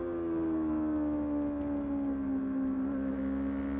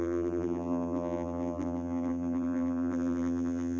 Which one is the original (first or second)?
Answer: first